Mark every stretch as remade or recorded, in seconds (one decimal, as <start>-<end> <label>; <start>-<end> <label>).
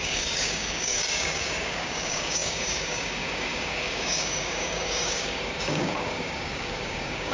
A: 0.0-7.3 remade